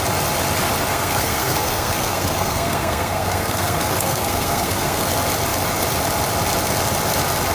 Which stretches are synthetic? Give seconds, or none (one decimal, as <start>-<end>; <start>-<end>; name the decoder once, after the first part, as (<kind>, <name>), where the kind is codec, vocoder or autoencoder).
0.9-5.1 (codec, SNAC)